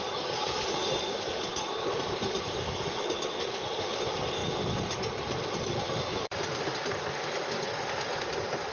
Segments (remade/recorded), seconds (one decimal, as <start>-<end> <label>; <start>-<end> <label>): 0.0-6.1 recorded; 6.1-7.2 remade; 7.2-8.7 recorded